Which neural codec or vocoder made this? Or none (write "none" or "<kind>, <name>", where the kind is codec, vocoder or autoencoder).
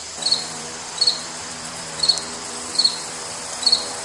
vocoder, BigVGAN v2